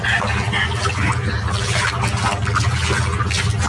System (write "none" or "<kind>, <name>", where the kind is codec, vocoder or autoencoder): none